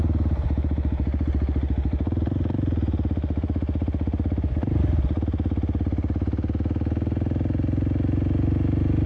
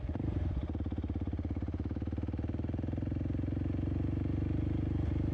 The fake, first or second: second